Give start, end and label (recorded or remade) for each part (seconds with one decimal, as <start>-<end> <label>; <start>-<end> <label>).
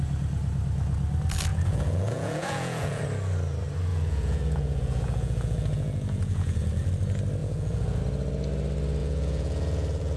0.0-1.5 recorded; 1.5-3.0 remade; 3.0-3.9 recorded; 3.9-6.9 remade; 6.9-7.4 recorded; 7.4-8.0 remade; 8.0-9.0 recorded; 9.0-10.2 remade